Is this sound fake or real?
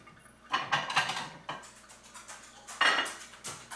real